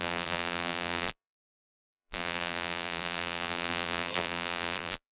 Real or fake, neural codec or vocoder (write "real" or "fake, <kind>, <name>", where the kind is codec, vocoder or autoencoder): fake, vocoder, BigVGAN v2